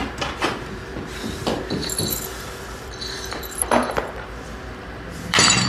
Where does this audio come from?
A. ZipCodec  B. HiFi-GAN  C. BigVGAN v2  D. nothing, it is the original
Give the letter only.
C